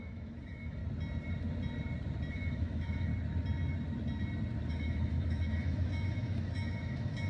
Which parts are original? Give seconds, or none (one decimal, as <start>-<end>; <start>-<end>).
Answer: 0.8-2.3; 3.1-4.7